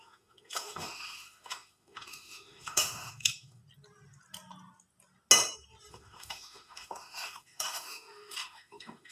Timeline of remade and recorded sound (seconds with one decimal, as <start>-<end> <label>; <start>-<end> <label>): 0.0-3.6 remade; 3.6-5.9 recorded; 5.9-9.1 remade

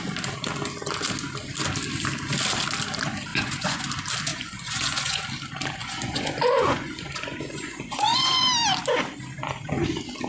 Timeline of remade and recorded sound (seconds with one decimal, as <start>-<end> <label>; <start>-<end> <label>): 0.0-3.3 recorded; 3.3-3.8 remade; 3.8-4.3 recorded; 4.3-5.2 remade; 5.2-5.8 recorded; 5.8-8.5 remade; 8.5-10.3 recorded

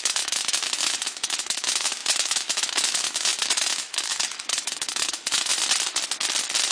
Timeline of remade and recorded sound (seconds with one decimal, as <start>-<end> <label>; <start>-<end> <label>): 0.0-5.5 remade; 5.5-6.7 recorded

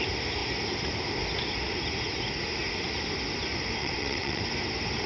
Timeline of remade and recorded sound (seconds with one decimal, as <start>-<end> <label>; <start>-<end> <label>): 0.0-3.8 recorded; 3.8-4.4 remade; 4.4-5.1 recorded

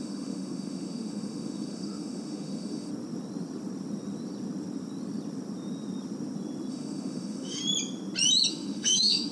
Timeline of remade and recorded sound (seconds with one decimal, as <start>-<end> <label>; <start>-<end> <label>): 0.0-2.9 remade; 2.9-6.7 recorded; 6.7-7.6 remade; 7.6-8.5 recorded; 8.5-9.3 remade

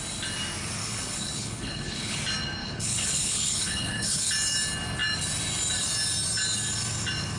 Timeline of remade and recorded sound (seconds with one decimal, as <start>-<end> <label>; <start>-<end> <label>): 0.0-0.8 recorded; 0.8-2.2 remade; 2.2-2.6 recorded; 2.6-4.3 remade; 4.3-7.4 recorded

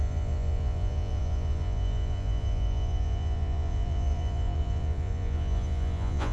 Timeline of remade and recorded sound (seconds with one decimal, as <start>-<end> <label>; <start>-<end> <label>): 0.0-6.3 remade